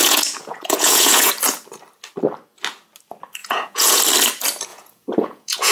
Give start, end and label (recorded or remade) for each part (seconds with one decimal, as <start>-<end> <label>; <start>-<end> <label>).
0.0-1.3 remade; 1.3-3.4 recorded; 3.4-4.0 remade; 4.0-4.7 recorded; 4.7-5.7 remade